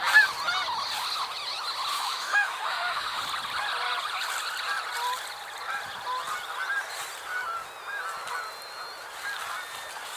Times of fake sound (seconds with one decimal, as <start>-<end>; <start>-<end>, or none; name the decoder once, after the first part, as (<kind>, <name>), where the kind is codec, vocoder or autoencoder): 1.9-3.2 (autoencoder, DAC-VAE)

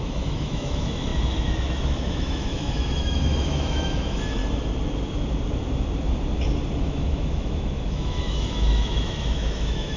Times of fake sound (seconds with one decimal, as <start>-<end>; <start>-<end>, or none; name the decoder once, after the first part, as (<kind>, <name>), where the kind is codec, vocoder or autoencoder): 0.0-4.4 (autoencoder, DAC-VAE); 6.8-10.0

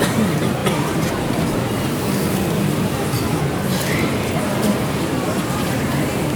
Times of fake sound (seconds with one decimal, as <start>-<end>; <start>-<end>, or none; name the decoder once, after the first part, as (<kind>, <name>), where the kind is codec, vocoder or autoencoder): none